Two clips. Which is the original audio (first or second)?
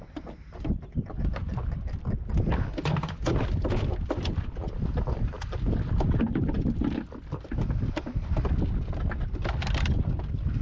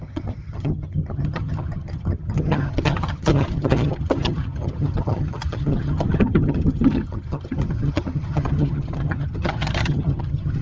first